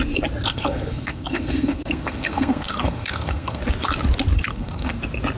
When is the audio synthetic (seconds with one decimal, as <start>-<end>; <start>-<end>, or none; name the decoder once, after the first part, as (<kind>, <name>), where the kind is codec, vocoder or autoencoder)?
0.4-3.6 (codec, SNAC); 4.5-5.0